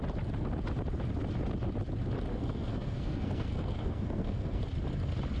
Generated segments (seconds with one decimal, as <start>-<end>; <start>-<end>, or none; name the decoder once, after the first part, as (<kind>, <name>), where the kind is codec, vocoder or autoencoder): 2.3-4.6 (codec, SNAC)